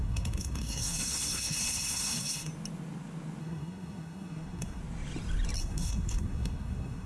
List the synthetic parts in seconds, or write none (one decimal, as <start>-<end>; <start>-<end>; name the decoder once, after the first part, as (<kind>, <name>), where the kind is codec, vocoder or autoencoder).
0.0-2.5 (codec, SNAC); 3.4-4.8; 5.6-7.1